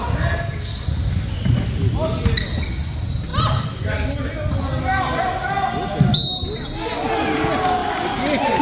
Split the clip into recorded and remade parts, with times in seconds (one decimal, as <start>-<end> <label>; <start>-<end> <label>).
0.0-8.6 recorded